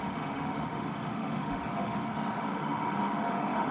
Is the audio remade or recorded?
remade